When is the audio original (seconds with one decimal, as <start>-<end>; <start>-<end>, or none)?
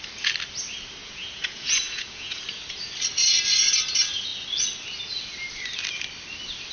0.0-1.0; 2.4-6.7